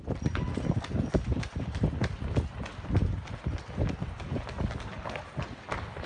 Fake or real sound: real